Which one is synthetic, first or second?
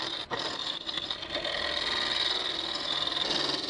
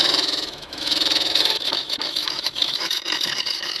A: second